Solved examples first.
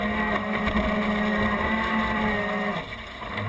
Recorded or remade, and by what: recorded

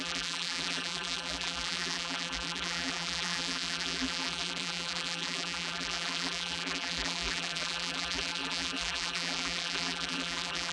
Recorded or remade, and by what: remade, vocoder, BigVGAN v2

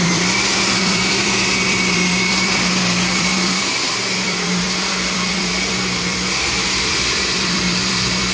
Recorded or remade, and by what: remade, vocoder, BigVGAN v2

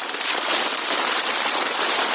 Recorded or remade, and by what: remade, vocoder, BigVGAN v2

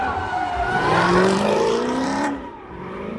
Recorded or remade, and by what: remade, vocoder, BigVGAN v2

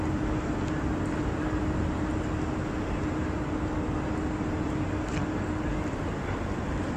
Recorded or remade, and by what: recorded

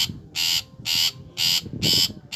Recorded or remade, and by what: recorded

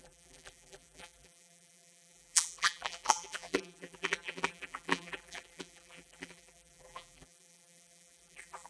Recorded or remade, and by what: remade, vocoder, BigVGAN v2